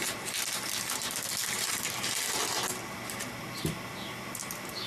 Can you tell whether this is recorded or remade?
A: recorded